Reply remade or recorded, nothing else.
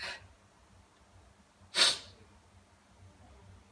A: recorded